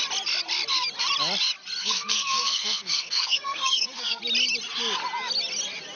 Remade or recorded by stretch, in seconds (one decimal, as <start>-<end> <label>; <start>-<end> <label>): 0.0-1.8 recorded; 1.8-4.2 remade; 4.2-6.0 recorded